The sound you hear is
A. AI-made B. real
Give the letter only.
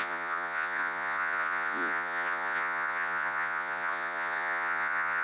A